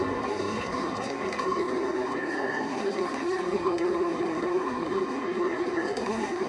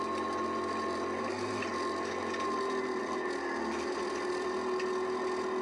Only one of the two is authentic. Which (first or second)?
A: second